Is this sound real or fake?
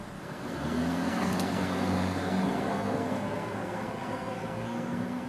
fake